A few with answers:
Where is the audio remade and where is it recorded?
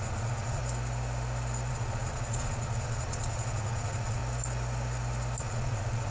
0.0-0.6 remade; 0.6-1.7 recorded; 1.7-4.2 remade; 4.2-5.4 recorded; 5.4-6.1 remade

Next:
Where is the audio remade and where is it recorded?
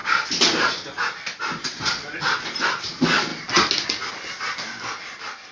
0.0-5.5 recorded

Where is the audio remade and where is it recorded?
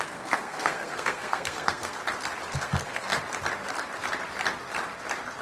0.0-2.0 remade; 2.0-2.6 recorded; 2.6-3.1 remade; 3.1-5.4 recorded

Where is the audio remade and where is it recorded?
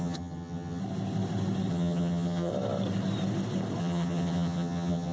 0.0-0.8 remade; 0.8-1.7 recorded; 1.7-2.5 remade; 2.5-3.8 recorded; 3.8-5.1 remade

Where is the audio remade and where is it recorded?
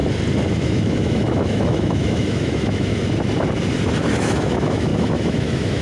0.0-0.5 recorded; 0.5-2.9 remade; 2.9-4.1 recorded; 4.1-5.8 remade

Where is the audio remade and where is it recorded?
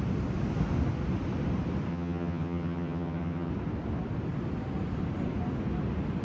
0.0-1.9 recorded; 1.9-3.5 remade; 3.5-6.2 recorded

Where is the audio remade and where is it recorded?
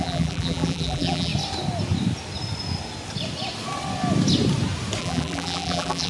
0.0-1.3 remade; 1.3-5.0 recorded; 5.0-6.1 remade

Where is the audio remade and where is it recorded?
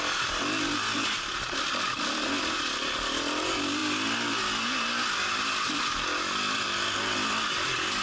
0.0-8.0 recorded